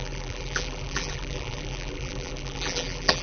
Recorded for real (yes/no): no